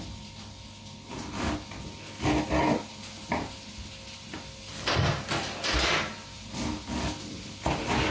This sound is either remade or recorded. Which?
recorded